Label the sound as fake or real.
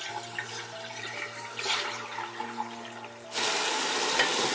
real